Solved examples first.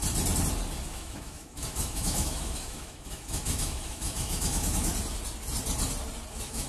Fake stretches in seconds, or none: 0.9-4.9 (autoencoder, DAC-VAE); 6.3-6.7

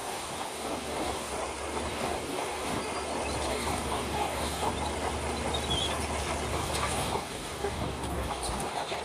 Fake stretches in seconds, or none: 0.0-1.3 (codec, DAC); 1.9-2.8; 3.5-4.7; 6.5-9.0